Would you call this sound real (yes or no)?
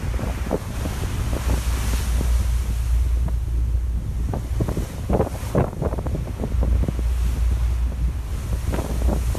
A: yes